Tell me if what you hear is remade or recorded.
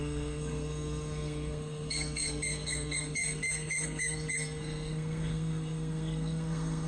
remade